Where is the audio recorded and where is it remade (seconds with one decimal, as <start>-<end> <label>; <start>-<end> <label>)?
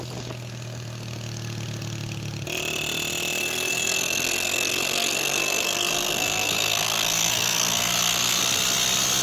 0.0-3.4 recorded; 3.4-8.4 remade; 8.4-9.2 recorded